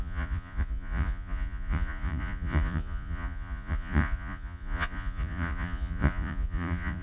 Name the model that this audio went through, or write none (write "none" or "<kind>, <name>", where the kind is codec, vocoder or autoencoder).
vocoder, Vocos